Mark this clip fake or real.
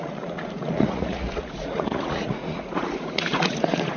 fake